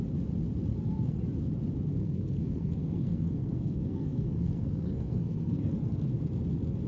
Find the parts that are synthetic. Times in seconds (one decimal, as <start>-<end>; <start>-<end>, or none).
0.7-1.2; 2.0-6.1